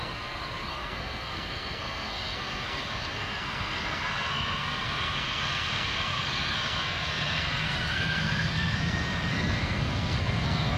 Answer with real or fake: fake